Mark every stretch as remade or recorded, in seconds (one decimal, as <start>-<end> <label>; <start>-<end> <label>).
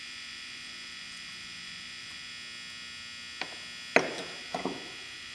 0.0-2.3 remade; 2.3-4.4 recorded; 4.4-5.3 remade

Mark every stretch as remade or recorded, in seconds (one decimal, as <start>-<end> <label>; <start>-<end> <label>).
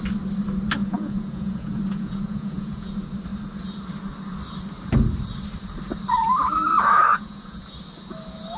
0.0-0.8 recorded; 0.8-2.9 remade; 2.9-7.1 recorded; 7.1-7.7 remade; 7.7-8.6 recorded